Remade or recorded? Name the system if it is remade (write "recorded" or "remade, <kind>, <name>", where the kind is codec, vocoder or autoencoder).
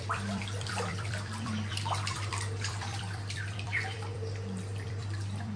remade, vocoder, BigVGAN v2